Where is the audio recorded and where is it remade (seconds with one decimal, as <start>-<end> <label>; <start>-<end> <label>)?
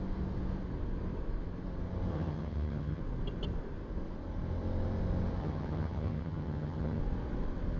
0.0-2.1 recorded; 2.1-3.0 remade; 3.0-5.4 recorded; 5.4-7.0 remade; 7.0-7.8 recorded